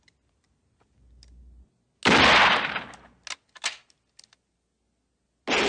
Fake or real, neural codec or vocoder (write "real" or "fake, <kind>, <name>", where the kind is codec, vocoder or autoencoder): real